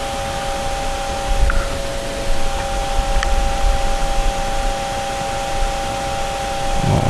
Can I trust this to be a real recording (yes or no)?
yes